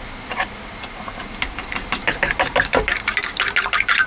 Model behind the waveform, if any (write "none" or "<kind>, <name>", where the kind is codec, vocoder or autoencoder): none